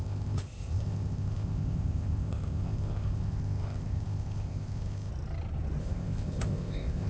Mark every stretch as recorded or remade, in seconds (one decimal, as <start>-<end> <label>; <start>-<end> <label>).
0.0-5.1 remade; 5.1-5.8 recorded; 5.8-7.1 remade